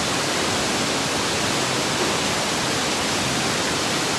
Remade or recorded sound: recorded